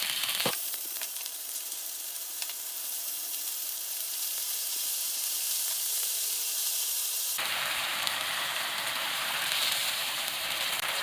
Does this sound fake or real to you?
fake